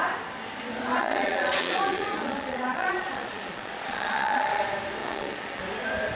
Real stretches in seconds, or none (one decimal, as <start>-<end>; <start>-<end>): 0.0-0.9; 4.6-5.0; 5.6-6.2